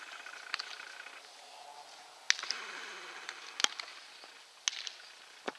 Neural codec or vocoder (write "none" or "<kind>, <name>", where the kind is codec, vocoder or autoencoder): none